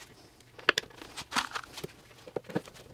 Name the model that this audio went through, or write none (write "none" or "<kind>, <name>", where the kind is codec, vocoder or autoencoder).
none